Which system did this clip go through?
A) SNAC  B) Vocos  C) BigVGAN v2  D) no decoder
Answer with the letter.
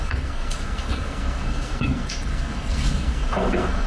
A